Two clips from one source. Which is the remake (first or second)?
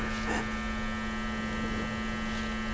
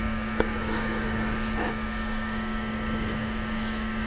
second